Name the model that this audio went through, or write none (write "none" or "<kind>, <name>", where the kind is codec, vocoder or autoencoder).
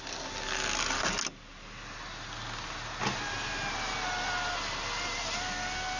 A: none